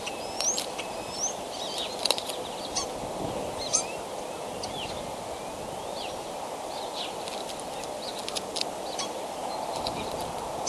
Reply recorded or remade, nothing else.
recorded